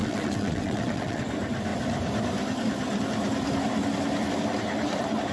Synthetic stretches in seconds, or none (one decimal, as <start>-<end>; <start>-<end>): 0.0-1.2